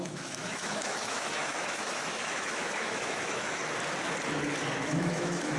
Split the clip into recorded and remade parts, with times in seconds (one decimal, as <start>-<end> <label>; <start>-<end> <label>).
0.0-3.6 remade; 3.6-4.8 recorded; 4.8-5.6 remade